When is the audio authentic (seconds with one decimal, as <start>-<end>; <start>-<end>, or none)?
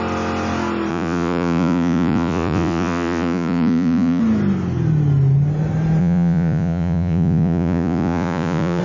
0.0-0.9; 4.2-6.0